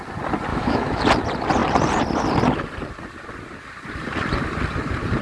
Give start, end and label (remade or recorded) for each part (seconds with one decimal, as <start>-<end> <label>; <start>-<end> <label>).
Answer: 0.0-0.5 recorded; 0.5-1.0 remade; 1.0-5.2 recorded